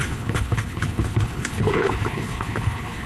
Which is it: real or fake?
fake